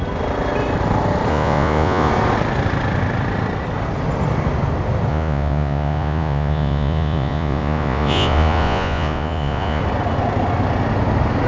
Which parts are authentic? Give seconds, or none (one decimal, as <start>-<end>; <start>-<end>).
0.0-1.3; 2.1-5.1; 9.8-11.5